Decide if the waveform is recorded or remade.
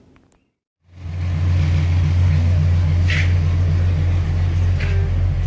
recorded